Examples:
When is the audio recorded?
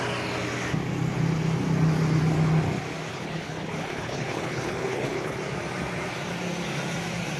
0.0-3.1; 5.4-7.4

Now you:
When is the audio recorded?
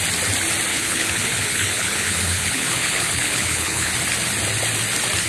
0.0-0.7; 3.9-5.3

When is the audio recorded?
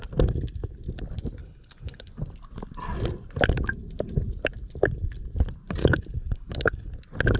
0.0-1.4; 2.1-5.8; 6.9-7.4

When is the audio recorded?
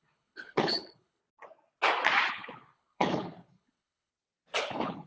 1.2-2.3; 4.1-4.6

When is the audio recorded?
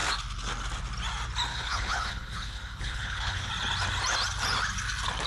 0.0-1.5; 3.5-5.3